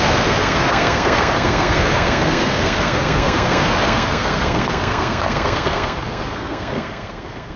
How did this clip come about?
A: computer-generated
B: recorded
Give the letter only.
A